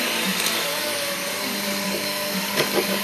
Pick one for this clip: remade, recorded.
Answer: remade